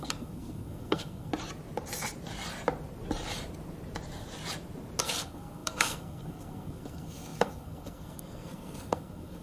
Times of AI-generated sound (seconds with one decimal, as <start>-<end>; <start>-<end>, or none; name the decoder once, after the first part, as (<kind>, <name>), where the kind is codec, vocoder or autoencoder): 0.0-1.3 (codec, SNAC); 5.0-9.4